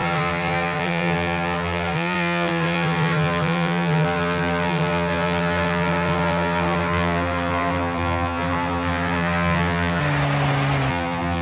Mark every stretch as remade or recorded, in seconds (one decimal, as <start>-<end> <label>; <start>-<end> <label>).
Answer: 0.0-10.0 remade; 10.0-10.9 recorded; 10.9-11.4 remade

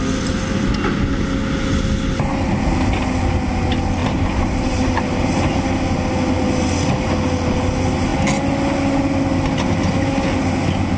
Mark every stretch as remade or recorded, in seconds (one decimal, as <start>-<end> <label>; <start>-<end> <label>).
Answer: 0.0-4.0 recorded; 4.0-5.5 remade; 5.5-11.0 recorded

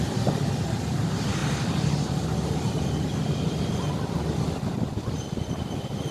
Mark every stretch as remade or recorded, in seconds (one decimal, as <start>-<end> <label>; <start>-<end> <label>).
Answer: 0.0-6.1 recorded

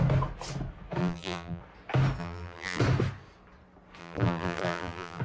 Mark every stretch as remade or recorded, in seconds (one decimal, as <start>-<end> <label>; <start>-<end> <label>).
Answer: 0.0-1.0 recorded; 1.0-1.6 remade; 1.6-2.2 recorded; 2.2-2.8 remade; 2.8-4.0 recorded; 4.0-5.2 remade

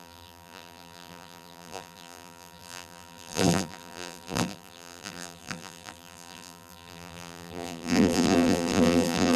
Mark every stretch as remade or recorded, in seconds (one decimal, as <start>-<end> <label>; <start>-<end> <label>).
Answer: 0.0-9.4 remade

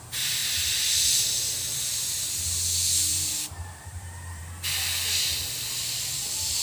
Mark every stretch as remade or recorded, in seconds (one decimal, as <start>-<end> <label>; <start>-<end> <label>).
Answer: 0.0-3.1 recorded; 3.1-4.4 remade; 4.4-6.6 recorded

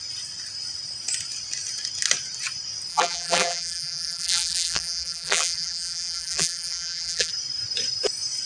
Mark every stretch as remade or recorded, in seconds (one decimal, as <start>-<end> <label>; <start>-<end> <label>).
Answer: 0.0-2.9 recorded; 2.9-7.3 remade; 7.3-8.5 recorded